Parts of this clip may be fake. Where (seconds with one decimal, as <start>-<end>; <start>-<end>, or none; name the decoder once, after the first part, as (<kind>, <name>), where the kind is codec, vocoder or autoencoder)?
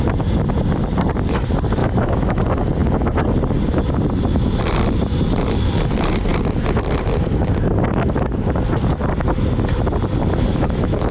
1.8-2.4 (autoencoder, DAC-VAE); 10.5-11.1